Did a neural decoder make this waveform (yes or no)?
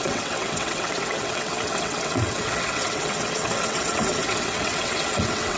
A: yes